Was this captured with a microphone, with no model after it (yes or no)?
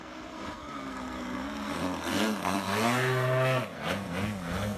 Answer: no